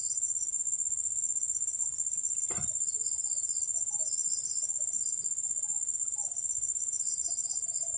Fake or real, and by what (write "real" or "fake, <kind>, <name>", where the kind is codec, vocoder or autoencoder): real